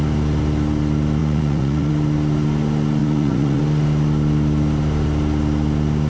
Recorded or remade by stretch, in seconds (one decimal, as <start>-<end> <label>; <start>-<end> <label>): 0.0-1.2 recorded; 1.2-1.9 remade; 1.9-3.0 recorded; 3.0-3.6 remade; 3.6-6.1 recorded

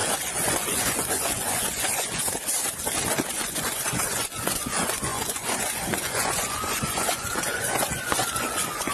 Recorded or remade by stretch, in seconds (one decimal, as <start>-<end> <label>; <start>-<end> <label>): 0.0-2.2 remade; 2.2-3.3 recorded; 3.3-8.9 remade

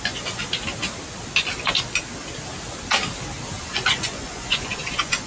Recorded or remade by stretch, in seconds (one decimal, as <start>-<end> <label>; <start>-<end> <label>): 0.0-0.4 remade; 0.4-3.6 recorded; 3.6-5.3 remade

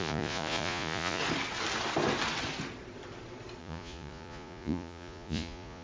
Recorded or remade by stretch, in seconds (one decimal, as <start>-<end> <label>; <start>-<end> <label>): 0.0-1.2 remade; 1.2-3.6 recorded; 3.6-5.8 remade

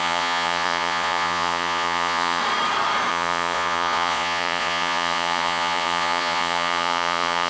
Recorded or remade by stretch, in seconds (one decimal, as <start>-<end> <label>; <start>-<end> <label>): 0.0-2.4 remade; 2.4-3.1 recorded; 3.1-7.5 remade

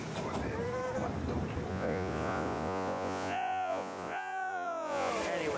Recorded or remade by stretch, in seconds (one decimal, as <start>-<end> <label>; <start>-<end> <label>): 0.0-1.7 recorded; 1.7-5.1 remade; 5.1-5.6 recorded

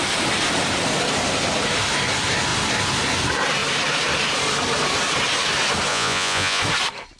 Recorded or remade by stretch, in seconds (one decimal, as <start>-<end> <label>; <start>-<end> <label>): 0.0-5.9 recorded; 5.9-6.6 remade; 6.6-7.2 recorded

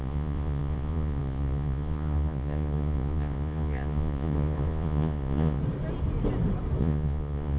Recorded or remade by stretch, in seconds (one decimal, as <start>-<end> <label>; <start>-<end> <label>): 0.0-5.6 remade; 5.6-6.8 recorded; 6.8-7.6 remade